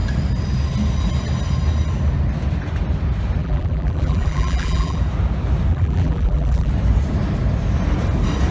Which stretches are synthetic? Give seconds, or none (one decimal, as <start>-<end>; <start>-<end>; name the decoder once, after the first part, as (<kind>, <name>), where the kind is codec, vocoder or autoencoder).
3.4-5.0 (vocoder, BigVGAN v2); 5.7-6.7